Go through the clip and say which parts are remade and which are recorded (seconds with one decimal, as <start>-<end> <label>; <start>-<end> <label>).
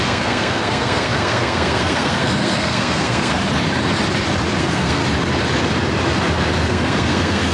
0.0-3.3 remade; 3.3-4.6 recorded; 4.6-5.0 remade; 5.0-6.6 recorded; 6.6-7.5 remade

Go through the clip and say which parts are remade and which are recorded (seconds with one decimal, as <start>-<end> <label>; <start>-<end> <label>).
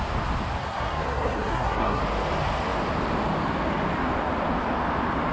0.0-0.6 recorded; 0.6-2.0 remade; 2.0-5.3 recorded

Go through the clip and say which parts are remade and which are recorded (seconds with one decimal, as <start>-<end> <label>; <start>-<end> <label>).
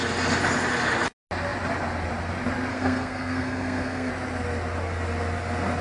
0.0-2.7 recorded; 2.7-4.1 remade; 4.1-5.8 recorded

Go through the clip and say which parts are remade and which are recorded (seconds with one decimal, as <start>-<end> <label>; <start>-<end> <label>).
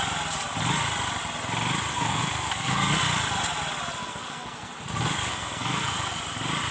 0.0-1.9 recorded; 1.9-2.9 remade; 2.9-4.0 recorded; 4.0-4.7 remade; 4.7-5.3 recorded; 5.3-6.2 remade; 6.2-6.7 recorded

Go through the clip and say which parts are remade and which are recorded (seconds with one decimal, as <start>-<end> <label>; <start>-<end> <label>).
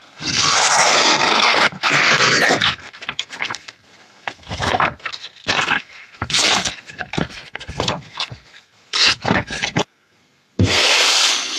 0.0-11.6 remade